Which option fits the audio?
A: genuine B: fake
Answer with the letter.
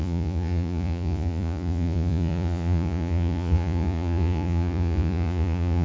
B